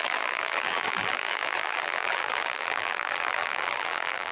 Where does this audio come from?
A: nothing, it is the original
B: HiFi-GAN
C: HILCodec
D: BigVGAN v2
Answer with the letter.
D